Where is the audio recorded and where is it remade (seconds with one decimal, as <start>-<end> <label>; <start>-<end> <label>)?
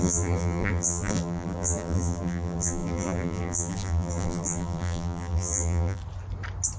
0.0-6.0 remade; 6.0-6.8 recorded